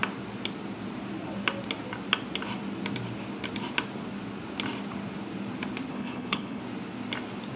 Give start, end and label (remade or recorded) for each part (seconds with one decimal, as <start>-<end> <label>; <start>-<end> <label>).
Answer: 0.0-5.9 recorded; 5.9-6.6 remade; 6.6-7.6 recorded